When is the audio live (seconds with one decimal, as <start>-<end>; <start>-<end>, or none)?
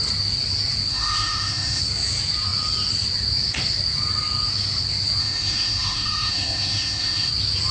0.0-0.9; 1.8-5.2; 7.3-7.7